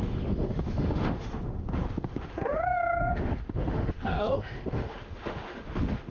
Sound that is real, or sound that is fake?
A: fake